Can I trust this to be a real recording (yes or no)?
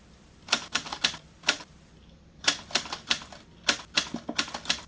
no